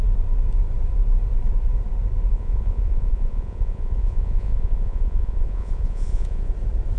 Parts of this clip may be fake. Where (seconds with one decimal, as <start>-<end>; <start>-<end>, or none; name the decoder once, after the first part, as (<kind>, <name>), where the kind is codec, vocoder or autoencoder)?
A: 2.3-6.5 (vocoder, Vocos)